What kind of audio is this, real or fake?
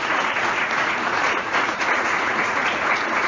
fake